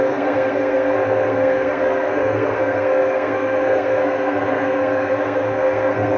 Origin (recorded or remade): remade